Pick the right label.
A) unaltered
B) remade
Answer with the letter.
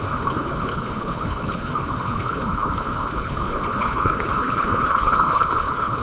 B